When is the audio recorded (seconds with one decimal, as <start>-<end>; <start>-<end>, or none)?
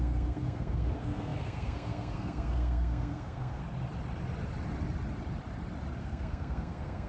3.6-6.0